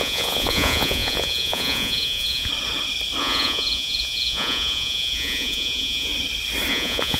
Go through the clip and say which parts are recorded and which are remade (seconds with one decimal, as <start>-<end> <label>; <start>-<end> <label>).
0.0-2.5 remade; 2.5-3.2 recorded; 3.2-6.1 remade; 6.1-6.7 recorded; 6.7-7.2 remade